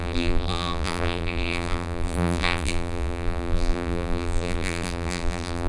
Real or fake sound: fake